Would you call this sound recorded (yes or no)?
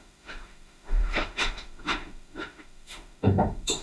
no